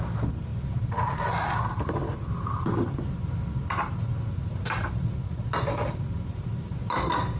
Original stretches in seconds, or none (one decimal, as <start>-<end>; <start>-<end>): 0.0-7.4